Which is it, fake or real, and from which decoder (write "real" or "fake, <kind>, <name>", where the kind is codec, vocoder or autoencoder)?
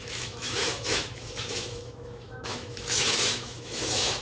fake, autoencoder, DAC-VAE